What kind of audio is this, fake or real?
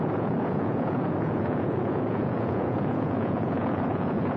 fake